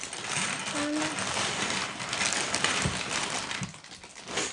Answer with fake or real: real